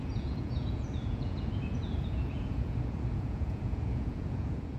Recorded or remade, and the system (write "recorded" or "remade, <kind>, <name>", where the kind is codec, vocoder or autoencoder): remade, vocoder, Vocos